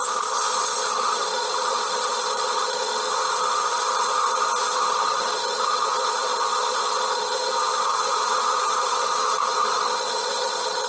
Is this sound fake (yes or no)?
yes